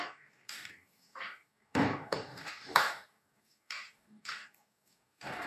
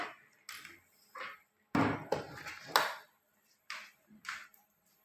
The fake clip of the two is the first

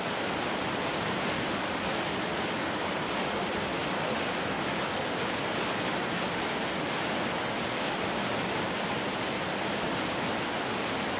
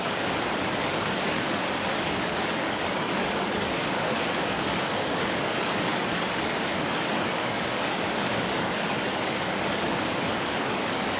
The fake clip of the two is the second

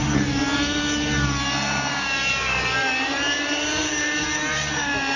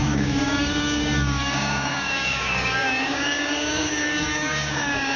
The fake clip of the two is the second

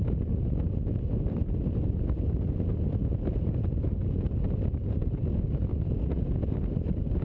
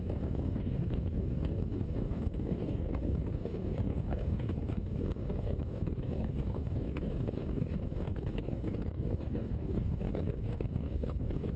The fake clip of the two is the second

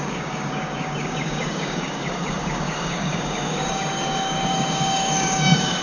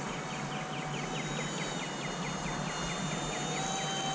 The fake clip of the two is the first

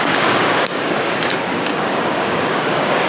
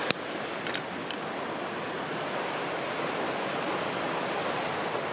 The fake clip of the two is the first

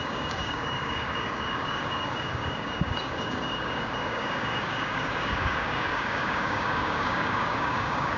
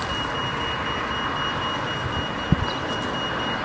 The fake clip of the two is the first